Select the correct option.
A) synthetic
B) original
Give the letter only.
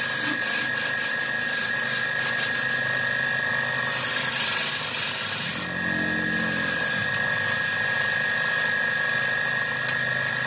B